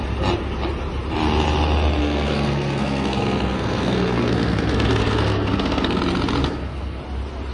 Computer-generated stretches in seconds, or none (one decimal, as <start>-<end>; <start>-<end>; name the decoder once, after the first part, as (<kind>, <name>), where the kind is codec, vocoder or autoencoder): 2.0-6.0 (codec, SNAC); 6.4-7.0

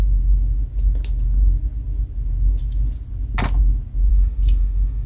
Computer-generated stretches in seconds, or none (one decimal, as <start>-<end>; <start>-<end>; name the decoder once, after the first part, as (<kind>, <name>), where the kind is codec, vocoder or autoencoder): 4.1-5.1 (autoencoder, DAC-VAE)

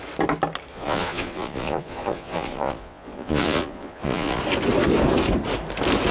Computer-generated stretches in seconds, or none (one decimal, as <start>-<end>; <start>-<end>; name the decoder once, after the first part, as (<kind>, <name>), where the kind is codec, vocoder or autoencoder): 0.7-4.4 (vocoder, Vocos)

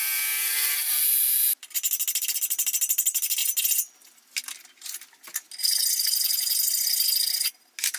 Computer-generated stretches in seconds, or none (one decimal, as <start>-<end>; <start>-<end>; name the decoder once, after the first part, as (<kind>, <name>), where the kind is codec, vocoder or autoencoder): none